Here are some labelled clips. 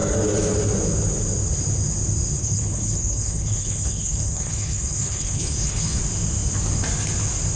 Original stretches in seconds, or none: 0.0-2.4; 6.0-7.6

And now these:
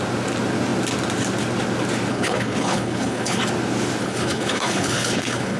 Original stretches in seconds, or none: 0.0-2.1; 3.4-4.0

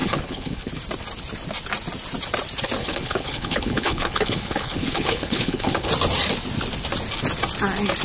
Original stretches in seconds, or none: 0.7-2.8; 5.9-8.0

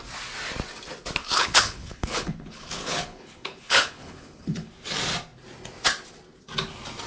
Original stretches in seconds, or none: 0.0-1.2; 4.7-7.1

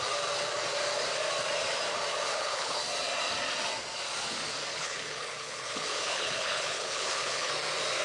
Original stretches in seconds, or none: 0.0-2.3; 2.8-4.7; 7.5-8.0

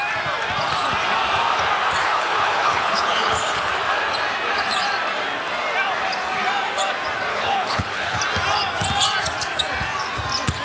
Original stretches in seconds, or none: 0.0-2.0; 3.7-7.3; 8.2-10.6

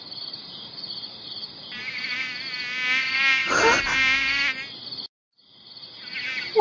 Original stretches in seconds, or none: 0.0-6.6

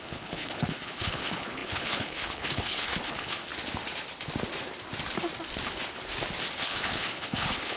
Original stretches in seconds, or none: 3.5-6.5